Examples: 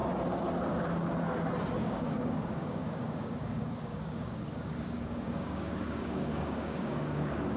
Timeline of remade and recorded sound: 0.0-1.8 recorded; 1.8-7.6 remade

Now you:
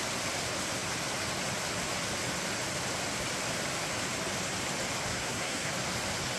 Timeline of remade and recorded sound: 0.0-5.1 recorded; 5.1-5.7 remade; 5.7-6.4 recorded

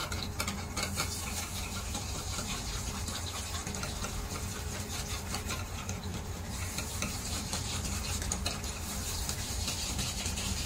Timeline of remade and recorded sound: 0.0-1.6 recorded; 1.6-3.6 remade; 3.6-4.3 recorded; 4.3-10.7 remade

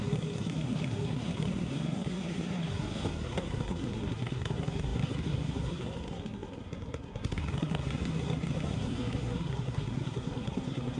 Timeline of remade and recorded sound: 0.0-11.0 remade

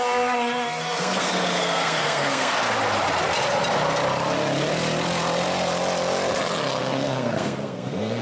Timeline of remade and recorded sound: 0.0-2.5 remade; 2.5-6.8 recorded; 6.8-8.2 remade

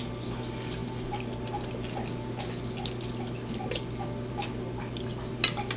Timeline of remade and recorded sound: 0.0-5.8 recorded

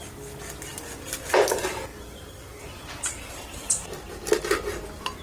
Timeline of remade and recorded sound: 0.0-5.2 recorded

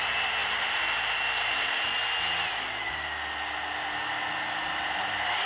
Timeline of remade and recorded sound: 0.0-5.5 recorded